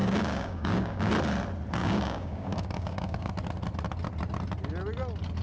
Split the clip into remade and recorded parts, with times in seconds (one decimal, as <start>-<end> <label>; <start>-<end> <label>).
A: 0.0-1.1 remade; 1.1-1.8 recorded; 1.8-3.3 remade; 3.3-5.4 recorded